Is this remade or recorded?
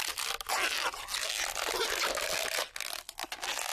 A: recorded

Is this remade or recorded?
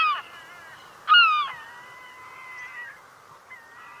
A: recorded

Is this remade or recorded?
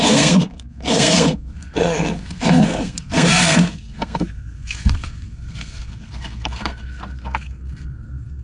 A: remade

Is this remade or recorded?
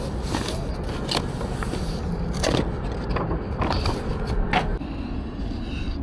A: recorded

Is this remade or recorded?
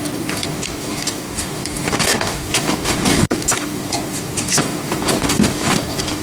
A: remade